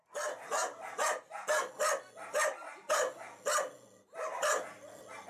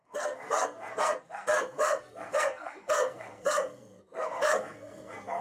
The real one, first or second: first